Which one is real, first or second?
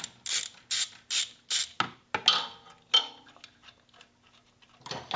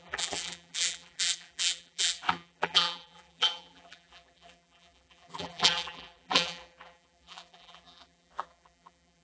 first